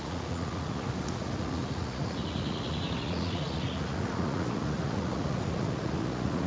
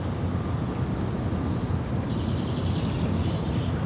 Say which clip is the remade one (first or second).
first